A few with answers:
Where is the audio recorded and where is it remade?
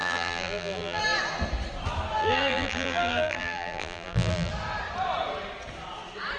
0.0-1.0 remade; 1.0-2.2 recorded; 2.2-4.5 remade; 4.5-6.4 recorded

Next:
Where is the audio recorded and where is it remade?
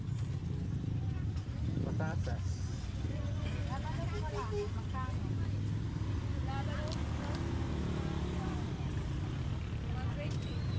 0.0-0.4 recorded; 0.4-2.6 remade; 2.6-10.8 recorded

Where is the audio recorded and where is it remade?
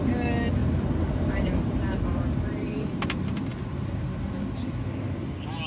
0.0-0.6 recorded; 0.6-3.0 remade; 3.0-5.7 recorded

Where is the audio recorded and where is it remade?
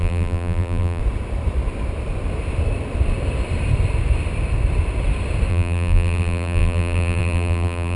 0.0-1.0 remade; 1.0-5.5 recorded; 5.5-8.0 remade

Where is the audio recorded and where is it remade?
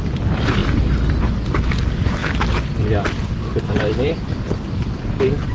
0.0-2.2 remade; 2.2-3.7 recorded; 3.7-5.5 remade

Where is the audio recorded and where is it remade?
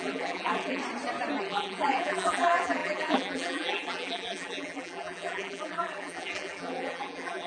0.0-0.8 remade; 0.8-1.4 recorded; 1.4-7.5 remade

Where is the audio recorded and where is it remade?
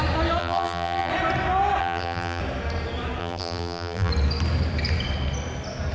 0.0-0.4 recorded; 0.4-1.1 remade; 1.1-1.8 recorded; 1.8-2.4 remade; 2.4-3.2 recorded; 3.2-4.1 remade; 4.1-5.9 recorded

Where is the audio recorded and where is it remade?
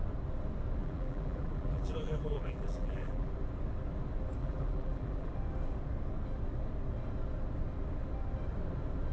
0.0-0.8 recorded; 0.8-3.3 remade; 3.3-4.4 recorded; 4.4-5.3 remade; 5.3-9.1 recorded